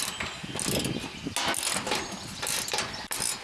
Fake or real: real